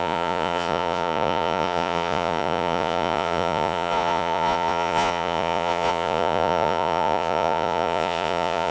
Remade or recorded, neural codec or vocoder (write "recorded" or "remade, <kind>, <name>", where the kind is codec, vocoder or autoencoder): remade, vocoder, Vocos